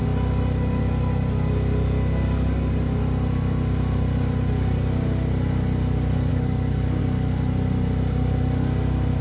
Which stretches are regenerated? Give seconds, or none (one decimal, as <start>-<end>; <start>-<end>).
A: 6.3-7.0